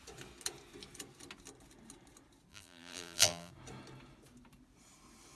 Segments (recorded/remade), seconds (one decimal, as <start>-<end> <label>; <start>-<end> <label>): 0.0-2.5 recorded; 2.5-3.5 remade; 3.5-5.4 recorded